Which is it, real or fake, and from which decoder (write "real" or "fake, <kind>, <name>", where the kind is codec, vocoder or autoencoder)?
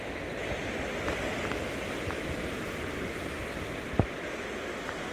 real